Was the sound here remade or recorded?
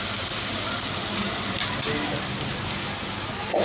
recorded